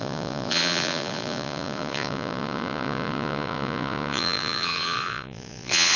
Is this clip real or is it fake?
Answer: fake